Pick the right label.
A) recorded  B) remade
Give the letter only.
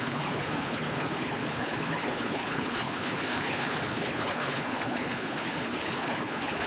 B